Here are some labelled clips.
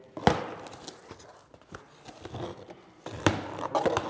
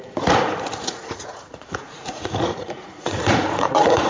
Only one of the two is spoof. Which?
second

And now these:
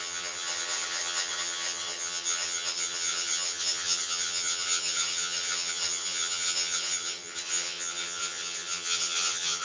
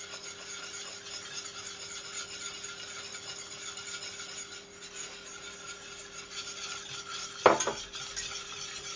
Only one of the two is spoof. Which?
first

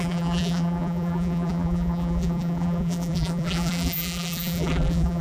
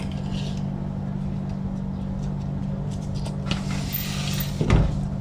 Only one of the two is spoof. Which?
first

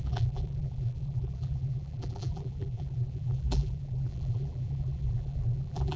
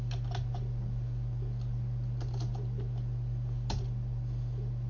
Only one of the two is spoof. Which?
first